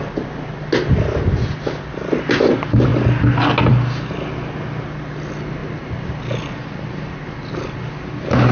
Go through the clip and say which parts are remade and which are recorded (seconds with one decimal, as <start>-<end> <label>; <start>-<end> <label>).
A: 0.0-8.5 recorded